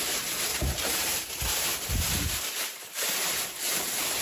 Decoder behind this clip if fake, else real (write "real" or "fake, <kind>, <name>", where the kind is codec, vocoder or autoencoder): fake, vocoder, BigVGAN v2